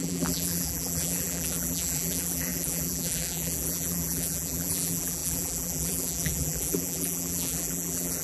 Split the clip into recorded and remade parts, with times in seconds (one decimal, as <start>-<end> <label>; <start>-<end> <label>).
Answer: 0.0-8.2 remade